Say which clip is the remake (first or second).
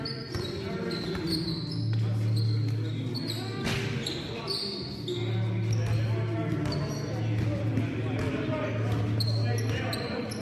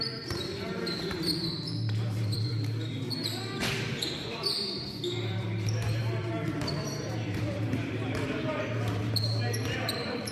second